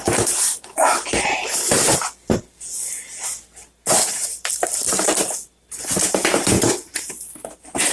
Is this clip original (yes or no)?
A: yes